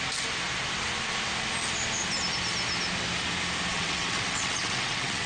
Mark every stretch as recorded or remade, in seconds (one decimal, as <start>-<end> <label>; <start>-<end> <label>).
0.0-3.7 recorded; 3.7-5.3 remade